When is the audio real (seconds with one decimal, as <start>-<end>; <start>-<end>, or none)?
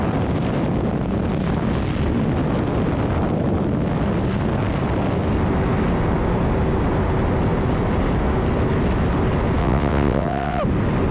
0.0-9.6; 10.6-11.1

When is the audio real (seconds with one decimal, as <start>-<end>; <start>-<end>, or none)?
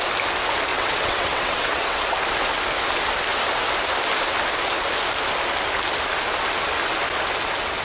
0.0-0.7; 2.0-7.8